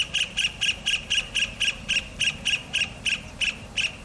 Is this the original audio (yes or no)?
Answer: yes